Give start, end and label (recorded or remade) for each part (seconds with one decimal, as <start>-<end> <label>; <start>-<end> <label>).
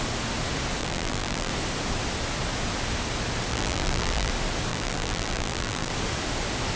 0.0-0.8 recorded; 0.8-1.5 remade; 1.5-3.5 recorded; 3.5-4.3 remade; 4.3-4.7 recorded; 4.7-5.9 remade; 5.9-6.8 recorded